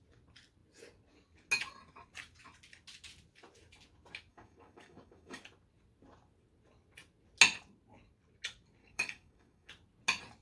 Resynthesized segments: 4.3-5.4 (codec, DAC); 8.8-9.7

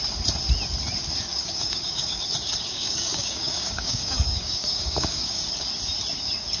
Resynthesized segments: 1.3-2.2 (codec, DAC); 2.7-5.4

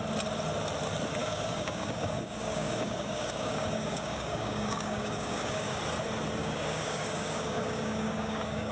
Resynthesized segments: 1.2-5.8 (codec, DAC); 6.4-8.7

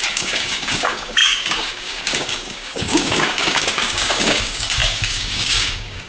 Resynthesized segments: 0.0-6.1 (codec, DAC)

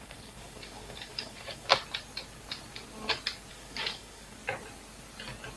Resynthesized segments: 0.0-1.7 (codec, DAC); 3.5-4.4

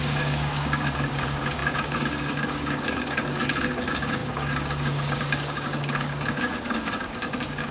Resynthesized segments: 0.0-7.7 (codec, DAC)